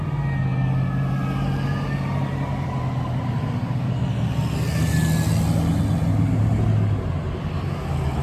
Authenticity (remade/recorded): recorded